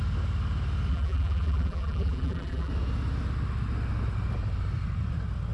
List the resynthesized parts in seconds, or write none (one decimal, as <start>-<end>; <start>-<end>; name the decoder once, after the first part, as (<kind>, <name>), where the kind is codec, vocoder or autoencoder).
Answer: 0.9-2.7 (vocoder, BigVGAN v2)